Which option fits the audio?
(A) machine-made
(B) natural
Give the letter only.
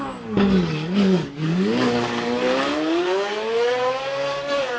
A